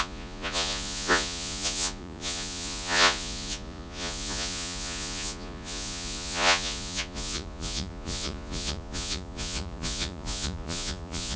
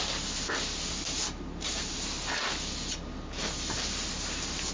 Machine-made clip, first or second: first